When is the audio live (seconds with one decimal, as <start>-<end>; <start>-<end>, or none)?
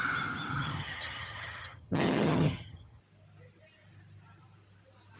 0.0-0.5; 3.0-5.2